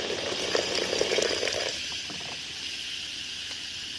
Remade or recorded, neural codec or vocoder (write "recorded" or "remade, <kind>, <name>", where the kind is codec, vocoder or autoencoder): recorded